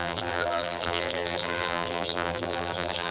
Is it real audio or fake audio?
fake